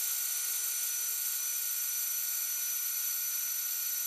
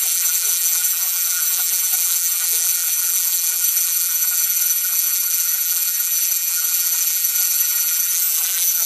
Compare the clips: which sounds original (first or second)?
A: first